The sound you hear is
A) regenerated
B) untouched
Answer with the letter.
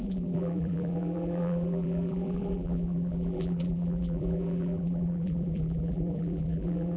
A